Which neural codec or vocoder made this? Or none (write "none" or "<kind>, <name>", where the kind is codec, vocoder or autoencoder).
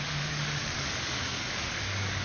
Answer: codec, DAC